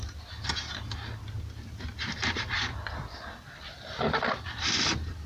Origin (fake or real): fake